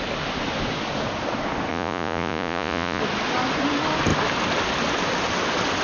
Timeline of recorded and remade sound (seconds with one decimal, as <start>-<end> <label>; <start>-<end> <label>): 0.0-1.7 recorded; 1.7-3.0 remade; 3.0-5.8 recorded